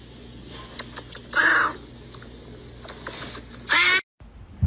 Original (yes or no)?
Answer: yes